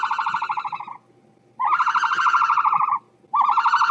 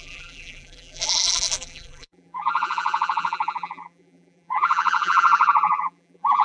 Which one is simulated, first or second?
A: second